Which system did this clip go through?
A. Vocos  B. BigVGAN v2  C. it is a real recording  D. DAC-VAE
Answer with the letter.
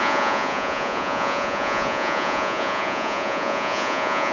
A